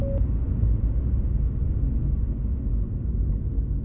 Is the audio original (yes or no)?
yes